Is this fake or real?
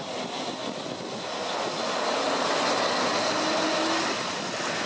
real